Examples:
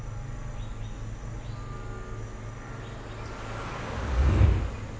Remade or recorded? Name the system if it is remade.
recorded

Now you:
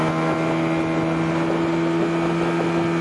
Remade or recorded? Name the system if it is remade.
recorded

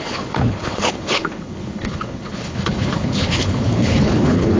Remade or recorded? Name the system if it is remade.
remade, codec, HILCodec